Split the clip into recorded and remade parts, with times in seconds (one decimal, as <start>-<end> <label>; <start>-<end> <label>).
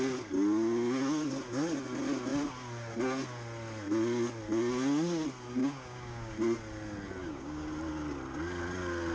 0.0-5.6 recorded; 5.6-6.3 remade; 6.3-7.2 recorded; 7.2-7.7 remade; 7.7-9.1 recorded